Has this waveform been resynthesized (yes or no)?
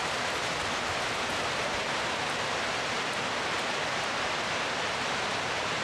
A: no